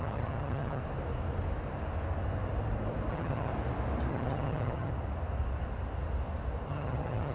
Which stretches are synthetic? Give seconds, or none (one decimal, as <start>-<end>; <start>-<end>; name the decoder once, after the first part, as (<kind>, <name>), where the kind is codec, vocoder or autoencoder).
0.0-0.8 (vocoder, HiFi-GAN); 3.1-3.5; 4.1-4.9; 6.7-7.3